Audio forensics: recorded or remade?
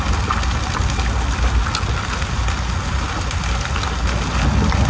recorded